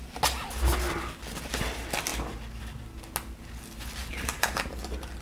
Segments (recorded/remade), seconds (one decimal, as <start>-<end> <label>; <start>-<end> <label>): 0.0-4.0 recorded; 4.0-4.7 remade; 4.7-5.2 recorded